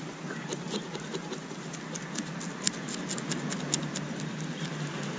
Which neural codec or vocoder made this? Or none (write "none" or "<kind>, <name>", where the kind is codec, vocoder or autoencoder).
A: none